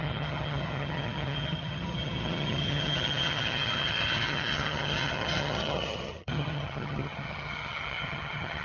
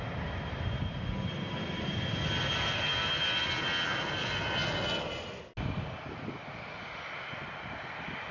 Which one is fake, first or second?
first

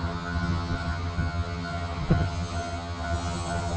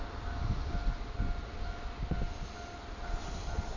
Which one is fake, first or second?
first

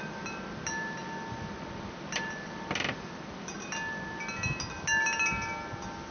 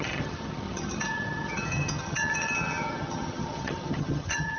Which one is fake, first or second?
second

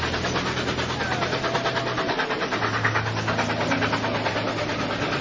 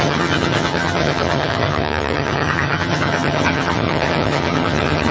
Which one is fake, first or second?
second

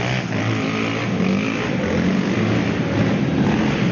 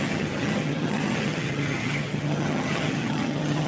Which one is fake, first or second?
second